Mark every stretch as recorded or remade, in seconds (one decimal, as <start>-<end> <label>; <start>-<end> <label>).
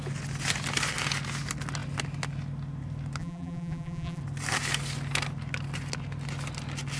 0.0-3.2 recorded; 3.2-4.2 remade; 4.2-7.0 recorded